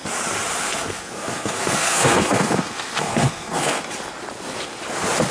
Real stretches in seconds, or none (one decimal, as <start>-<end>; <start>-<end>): 0.0-0.6; 3.8-5.3